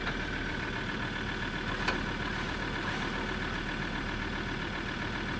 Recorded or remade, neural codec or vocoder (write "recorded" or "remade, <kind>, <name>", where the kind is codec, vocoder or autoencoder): recorded